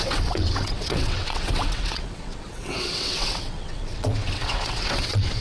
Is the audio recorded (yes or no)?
no